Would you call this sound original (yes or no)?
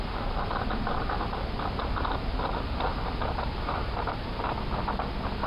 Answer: yes